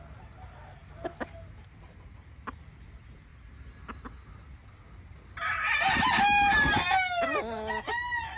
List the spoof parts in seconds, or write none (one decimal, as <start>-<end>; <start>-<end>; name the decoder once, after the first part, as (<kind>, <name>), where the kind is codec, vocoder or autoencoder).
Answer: none